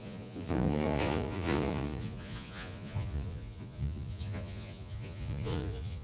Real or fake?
fake